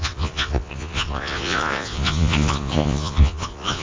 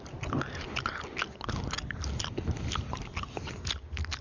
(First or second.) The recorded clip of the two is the second